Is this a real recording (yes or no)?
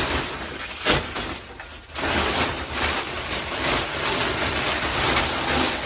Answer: yes